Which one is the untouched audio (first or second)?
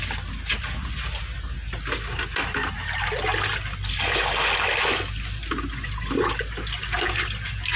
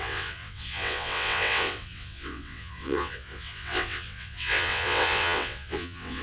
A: first